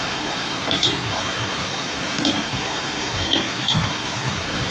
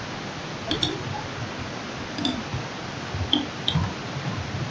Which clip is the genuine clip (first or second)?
second